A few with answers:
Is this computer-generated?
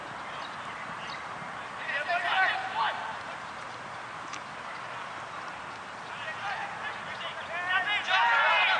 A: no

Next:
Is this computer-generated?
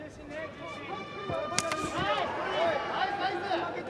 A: no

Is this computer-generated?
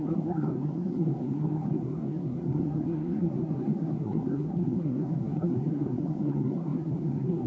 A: yes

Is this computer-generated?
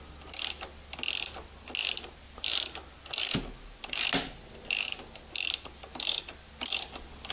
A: no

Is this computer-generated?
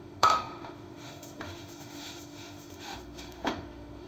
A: yes